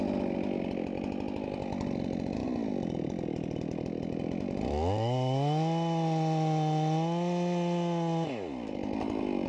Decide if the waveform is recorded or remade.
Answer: recorded